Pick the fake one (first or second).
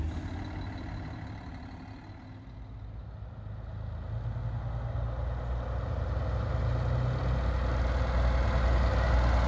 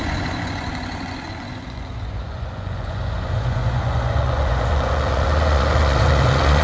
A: second